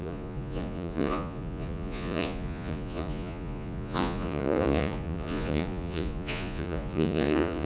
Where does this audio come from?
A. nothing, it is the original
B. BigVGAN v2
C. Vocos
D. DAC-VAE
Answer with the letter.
C